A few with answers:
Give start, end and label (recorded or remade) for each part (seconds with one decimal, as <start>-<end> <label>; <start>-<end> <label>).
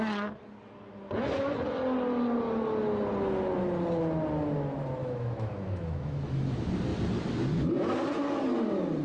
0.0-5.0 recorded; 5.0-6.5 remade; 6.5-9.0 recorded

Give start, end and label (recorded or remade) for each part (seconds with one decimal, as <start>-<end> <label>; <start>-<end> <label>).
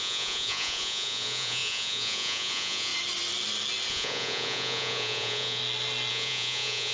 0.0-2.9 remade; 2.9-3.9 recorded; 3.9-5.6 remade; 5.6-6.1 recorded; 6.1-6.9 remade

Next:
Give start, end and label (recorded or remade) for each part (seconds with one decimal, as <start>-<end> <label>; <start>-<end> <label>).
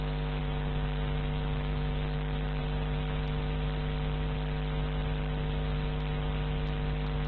0.0-0.4 recorded; 0.4-2.6 remade; 2.6-7.3 recorded